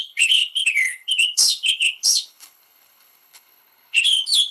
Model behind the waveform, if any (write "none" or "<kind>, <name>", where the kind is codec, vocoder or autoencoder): codec, HILCodec